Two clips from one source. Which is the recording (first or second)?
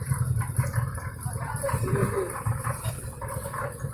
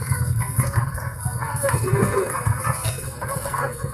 first